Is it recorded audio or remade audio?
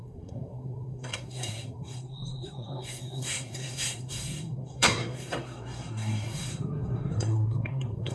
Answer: remade